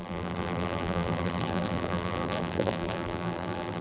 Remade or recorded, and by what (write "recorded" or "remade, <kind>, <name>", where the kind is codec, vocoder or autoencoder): remade, vocoder, BigVGAN v2